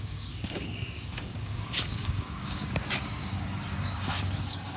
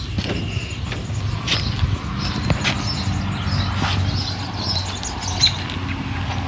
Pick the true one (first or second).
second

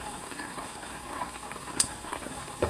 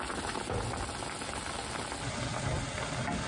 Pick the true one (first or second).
second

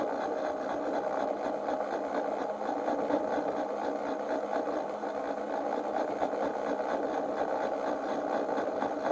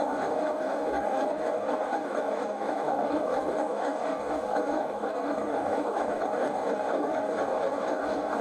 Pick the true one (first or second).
first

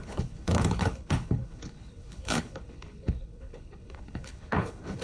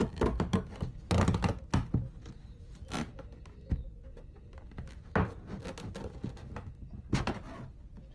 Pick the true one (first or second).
second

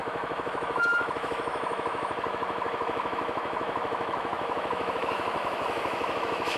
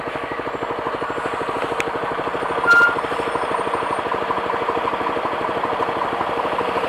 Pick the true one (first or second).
second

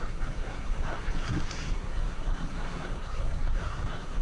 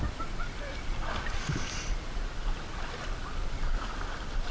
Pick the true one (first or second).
second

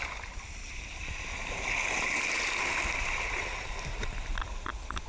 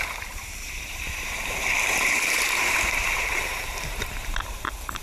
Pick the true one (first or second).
first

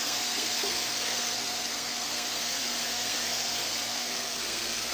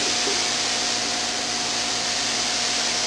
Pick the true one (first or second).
second